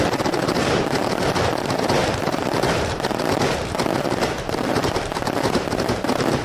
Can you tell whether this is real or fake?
fake